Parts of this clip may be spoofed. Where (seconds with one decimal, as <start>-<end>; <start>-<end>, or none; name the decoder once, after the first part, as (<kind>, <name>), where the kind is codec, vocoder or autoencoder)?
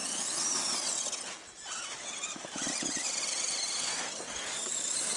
none